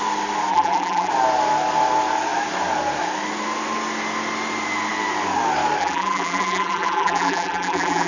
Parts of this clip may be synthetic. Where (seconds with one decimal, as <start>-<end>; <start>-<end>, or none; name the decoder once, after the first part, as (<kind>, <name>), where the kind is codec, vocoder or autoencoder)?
0.5-1.1 (vocoder, BigVGAN v2); 5.8-8.1